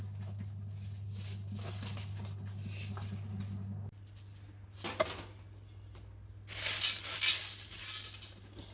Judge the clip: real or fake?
real